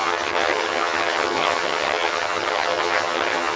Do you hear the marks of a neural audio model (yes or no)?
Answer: yes